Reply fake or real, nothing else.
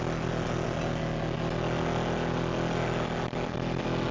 real